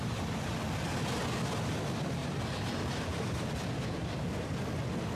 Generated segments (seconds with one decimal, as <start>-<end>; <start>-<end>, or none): 2.2-3.5